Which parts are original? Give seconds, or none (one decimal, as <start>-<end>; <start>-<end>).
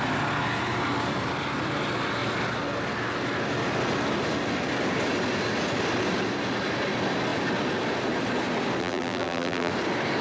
0.0-8.8; 9.7-10.2